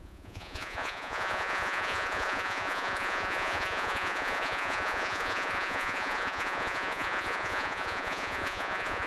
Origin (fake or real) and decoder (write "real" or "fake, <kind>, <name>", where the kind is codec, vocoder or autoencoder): fake, vocoder, Vocos